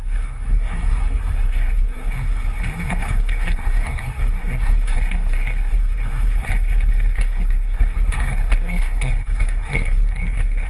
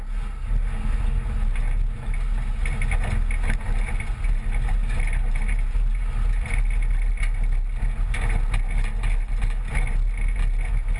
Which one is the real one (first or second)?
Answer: second